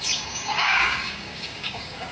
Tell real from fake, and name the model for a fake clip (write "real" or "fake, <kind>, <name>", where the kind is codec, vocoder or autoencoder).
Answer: fake, codec, DAC